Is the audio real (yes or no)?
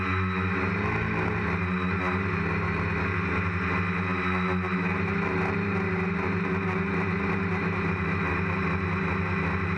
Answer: yes